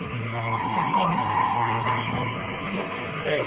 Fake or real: fake